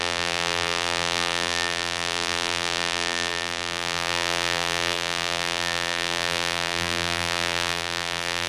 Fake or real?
fake